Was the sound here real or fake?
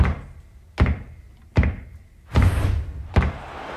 real